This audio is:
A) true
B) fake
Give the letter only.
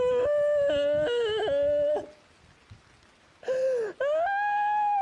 A